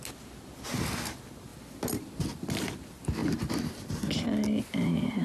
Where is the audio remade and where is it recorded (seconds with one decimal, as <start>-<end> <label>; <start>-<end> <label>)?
0.0-1.5 recorded; 1.5-2.7 remade; 2.7-3.2 recorded; 3.2-3.8 remade; 3.8-5.2 recorded